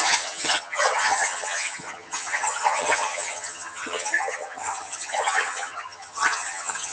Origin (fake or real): fake